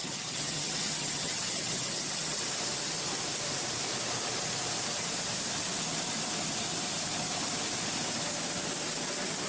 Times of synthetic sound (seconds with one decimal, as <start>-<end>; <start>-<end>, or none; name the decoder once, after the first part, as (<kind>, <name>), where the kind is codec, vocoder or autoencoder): 0.0-2.4 (vocoder, HiFi-GAN)